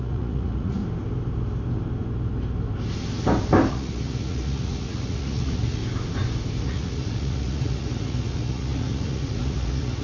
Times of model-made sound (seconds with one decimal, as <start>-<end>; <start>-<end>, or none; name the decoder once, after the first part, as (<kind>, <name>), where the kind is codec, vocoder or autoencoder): 0.0-0.8 (vocoder, Vocos); 3.7-5.8; 6.6-10.0